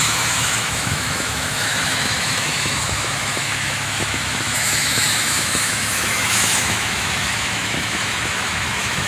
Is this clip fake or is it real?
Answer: fake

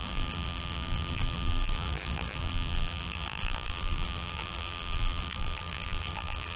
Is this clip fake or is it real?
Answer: fake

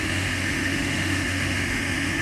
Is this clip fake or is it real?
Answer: fake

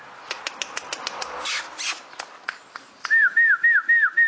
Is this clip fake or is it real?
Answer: real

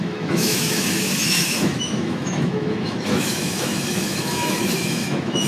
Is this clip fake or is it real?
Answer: fake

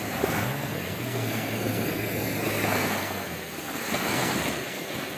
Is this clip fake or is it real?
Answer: fake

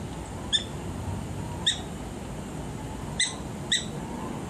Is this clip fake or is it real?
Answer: real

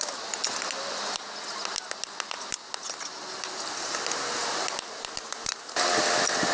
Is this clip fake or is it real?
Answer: real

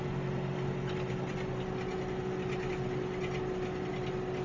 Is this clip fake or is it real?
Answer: real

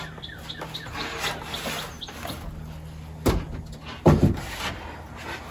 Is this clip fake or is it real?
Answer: real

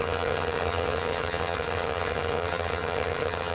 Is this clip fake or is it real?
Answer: fake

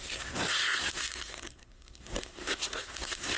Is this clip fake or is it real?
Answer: fake